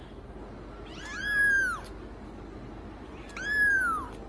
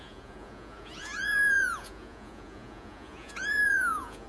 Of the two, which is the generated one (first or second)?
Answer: second